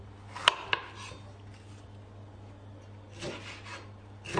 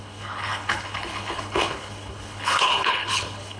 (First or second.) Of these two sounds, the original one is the first